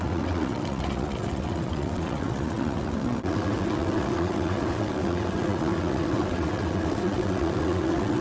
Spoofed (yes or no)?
yes